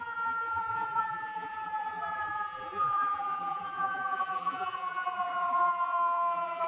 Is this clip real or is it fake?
fake